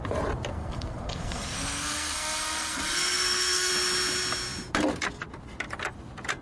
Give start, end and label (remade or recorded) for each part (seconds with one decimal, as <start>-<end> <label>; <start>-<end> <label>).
0.0-0.5 recorded; 0.5-3.7 remade; 3.7-6.4 recorded